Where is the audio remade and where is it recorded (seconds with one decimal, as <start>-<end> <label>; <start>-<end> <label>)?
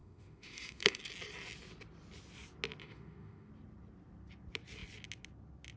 0.0-1.0 remade; 1.0-2.8 recorded; 2.8-3.5 remade; 3.5-5.8 recorded